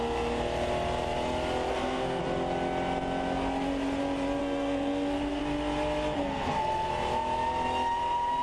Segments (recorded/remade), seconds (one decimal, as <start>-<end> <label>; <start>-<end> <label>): 0.0-1.7 recorded; 1.7-2.2 remade; 2.2-4.4 recorded; 4.4-5.4 remade; 5.4-6.2 recorded; 6.2-6.9 remade; 6.9-8.4 recorded